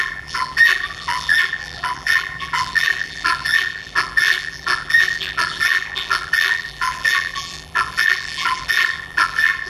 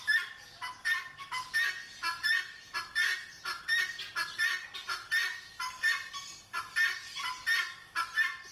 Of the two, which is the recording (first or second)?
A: second